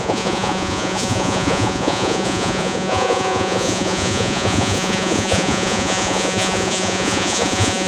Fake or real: fake